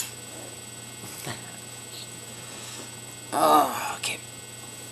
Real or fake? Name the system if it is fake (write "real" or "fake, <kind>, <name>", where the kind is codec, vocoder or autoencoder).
real